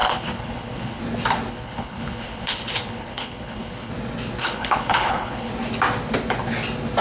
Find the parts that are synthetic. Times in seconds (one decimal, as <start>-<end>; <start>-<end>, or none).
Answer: 0.0-1.0; 1.5-3.9; 4.4-5.5